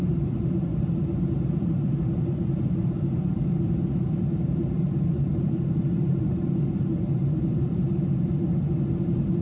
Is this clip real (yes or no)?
no